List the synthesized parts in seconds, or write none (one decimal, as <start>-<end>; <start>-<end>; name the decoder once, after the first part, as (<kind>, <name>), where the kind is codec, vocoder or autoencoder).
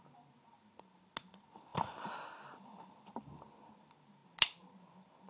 none